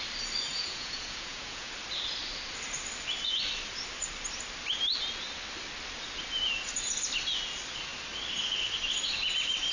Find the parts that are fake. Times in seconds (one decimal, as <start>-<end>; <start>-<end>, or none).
0.5-1.7